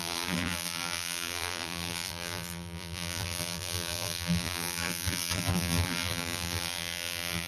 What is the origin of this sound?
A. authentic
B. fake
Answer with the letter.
B